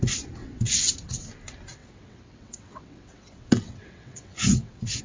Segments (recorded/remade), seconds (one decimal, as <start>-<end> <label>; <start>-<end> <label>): 0.0-0.4 recorded; 0.4-0.9 remade; 0.9-1.8 recorded; 1.8-5.0 remade